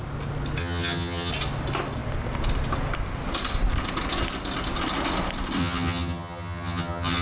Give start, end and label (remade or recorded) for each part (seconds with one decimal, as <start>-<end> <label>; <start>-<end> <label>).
0.0-0.6 recorded; 0.6-1.3 remade; 1.3-5.6 recorded; 5.6-7.2 remade